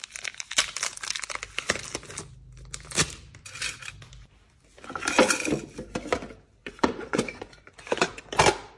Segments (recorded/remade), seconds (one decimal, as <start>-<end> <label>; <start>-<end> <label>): 0.0-6.6 recorded; 6.6-8.2 remade; 8.2-8.8 recorded